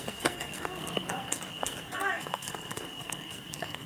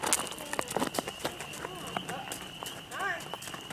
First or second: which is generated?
first